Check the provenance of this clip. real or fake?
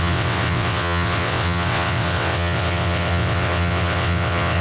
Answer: fake